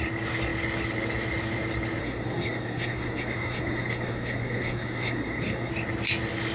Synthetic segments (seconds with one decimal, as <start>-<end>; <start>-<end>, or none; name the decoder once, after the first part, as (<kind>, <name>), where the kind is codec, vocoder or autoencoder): 2.0-5.7 (codec, SNAC)

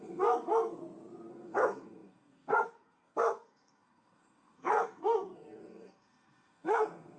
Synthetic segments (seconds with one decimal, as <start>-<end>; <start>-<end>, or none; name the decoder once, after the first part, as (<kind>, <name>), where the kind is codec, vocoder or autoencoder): 0.0-0.8 (codec, SNAC); 1.3-7.2

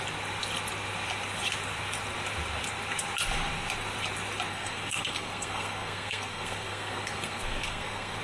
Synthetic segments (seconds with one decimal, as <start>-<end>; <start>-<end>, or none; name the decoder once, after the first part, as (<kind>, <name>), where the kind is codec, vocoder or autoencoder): 4.5-8.2 (codec, SNAC)

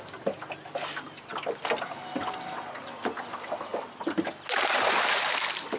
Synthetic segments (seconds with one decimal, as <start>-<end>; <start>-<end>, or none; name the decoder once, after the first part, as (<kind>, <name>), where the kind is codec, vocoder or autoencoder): none

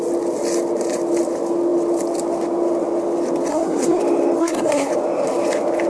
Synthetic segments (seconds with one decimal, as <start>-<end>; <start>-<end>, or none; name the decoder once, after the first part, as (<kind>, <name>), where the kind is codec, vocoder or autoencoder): 3.5-4.0 (codec, SNAC); 4.4-4.9

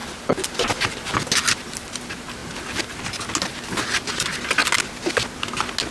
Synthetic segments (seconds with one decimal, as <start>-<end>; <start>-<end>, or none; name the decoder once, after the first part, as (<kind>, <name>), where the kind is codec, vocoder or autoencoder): none